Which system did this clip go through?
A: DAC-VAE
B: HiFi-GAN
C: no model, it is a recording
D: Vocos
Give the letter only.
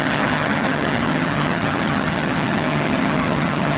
B